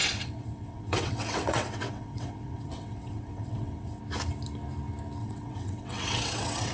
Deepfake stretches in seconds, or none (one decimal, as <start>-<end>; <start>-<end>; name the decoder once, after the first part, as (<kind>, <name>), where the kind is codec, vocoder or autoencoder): 0.0-4.0 (vocoder, WaveNeXt); 5.2-6.7